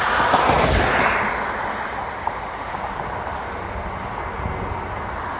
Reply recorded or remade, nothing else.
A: recorded